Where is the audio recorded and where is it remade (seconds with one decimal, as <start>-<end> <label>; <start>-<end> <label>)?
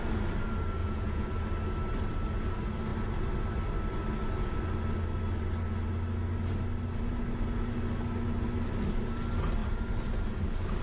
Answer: 0.0-0.8 recorded; 0.8-1.3 remade; 1.3-10.8 recorded